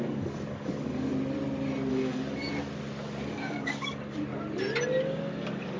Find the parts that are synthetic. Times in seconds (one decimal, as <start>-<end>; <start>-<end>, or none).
0.0-1.1; 1.9-2.5; 3.3-4.3; 5.2-5.8